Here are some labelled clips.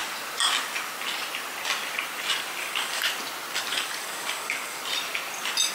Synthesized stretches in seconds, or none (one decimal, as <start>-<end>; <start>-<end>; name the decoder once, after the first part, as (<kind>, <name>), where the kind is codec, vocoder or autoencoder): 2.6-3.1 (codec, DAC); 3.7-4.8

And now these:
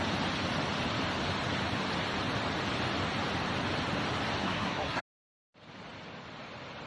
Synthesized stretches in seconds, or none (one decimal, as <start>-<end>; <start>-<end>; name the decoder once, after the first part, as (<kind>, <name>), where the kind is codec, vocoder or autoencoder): 4.4-5.0 (codec, SNAC)

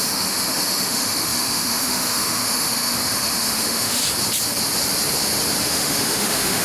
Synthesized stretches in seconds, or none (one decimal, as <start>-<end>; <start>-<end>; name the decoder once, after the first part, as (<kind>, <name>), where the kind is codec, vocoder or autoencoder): 0.0-4.0 (autoencoder, DAC-VAE); 5.6-6.6

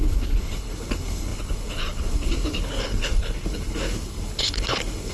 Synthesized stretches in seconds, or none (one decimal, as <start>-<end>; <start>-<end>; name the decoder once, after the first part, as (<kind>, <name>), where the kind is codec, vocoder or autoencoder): 0.0-5.1 (codec, HILCodec)

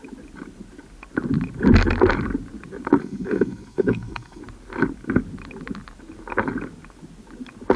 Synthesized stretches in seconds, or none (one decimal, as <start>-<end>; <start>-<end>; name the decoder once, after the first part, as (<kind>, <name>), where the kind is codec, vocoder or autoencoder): 3.0-4.4 (codec, SNAC)

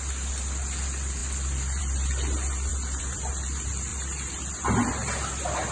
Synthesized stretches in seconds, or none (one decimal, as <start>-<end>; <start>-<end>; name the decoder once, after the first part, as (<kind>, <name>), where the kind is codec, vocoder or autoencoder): 2.7-3.3 (vocoder, BigVGAN v2); 3.9-4.9

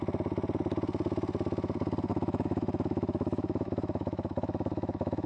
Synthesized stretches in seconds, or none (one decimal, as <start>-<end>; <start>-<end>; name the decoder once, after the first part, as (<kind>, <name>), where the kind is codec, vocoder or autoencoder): 2.1-5.3 (autoencoder, DAC-VAE)

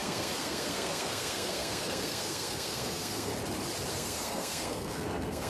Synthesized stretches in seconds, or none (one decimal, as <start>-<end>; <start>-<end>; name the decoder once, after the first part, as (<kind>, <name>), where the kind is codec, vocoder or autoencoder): 0.0-3.3 (codec, SNAC); 3.9-5.5